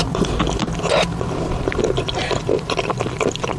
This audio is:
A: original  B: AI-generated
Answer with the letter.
B